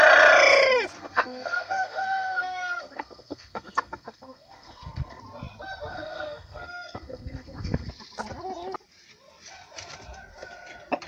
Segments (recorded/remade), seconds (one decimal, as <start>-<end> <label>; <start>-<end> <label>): 0.0-1.0 recorded; 1.0-5.2 remade; 5.2-5.9 recorded; 5.9-7.9 remade; 7.9-11.1 recorded